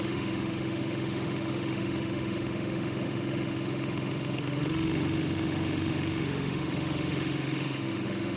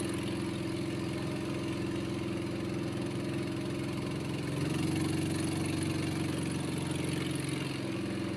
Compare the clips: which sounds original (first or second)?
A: second